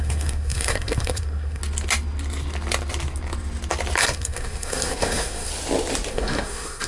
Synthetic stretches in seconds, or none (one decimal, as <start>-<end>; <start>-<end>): 0.0-1.6; 4.0-5.5; 6.1-6.9